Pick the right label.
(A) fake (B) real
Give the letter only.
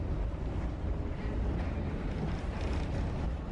B